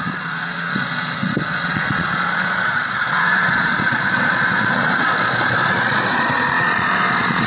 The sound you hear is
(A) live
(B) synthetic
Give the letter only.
B